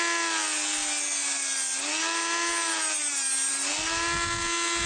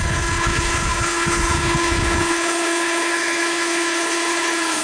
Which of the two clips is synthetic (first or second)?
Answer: second